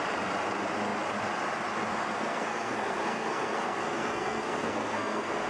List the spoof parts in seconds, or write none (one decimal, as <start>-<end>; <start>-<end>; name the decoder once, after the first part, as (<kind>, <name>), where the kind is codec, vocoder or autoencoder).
1.9-5.5 (codec, SNAC)

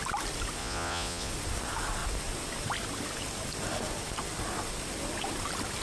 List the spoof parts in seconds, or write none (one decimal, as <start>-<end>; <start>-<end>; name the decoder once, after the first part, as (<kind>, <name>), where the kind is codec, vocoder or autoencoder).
0.6-1.3 (vocoder, Vocos)

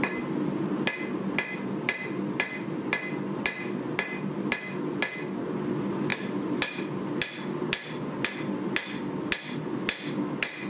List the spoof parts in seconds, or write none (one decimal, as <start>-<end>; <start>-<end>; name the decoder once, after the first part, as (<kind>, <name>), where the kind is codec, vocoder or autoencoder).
none

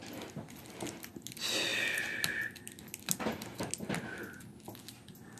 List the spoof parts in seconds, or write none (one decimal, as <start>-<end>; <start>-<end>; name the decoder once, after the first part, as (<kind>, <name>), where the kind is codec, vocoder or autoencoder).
none

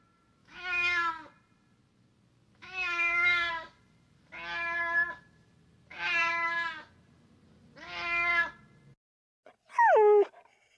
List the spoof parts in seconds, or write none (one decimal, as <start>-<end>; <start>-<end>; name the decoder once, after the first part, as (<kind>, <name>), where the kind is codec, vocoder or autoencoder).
0.4-1.1 (autoencoder, DAC-VAE); 2.6-3.5

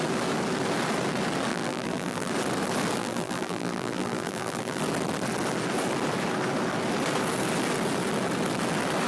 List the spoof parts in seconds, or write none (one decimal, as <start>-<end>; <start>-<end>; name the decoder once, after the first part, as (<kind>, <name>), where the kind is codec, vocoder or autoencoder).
1.5-2.3 (vocoder, BigVGAN v2); 3.0-4.8